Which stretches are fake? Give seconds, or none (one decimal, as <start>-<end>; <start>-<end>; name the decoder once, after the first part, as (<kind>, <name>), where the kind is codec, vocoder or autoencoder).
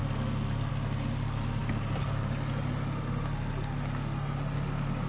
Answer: none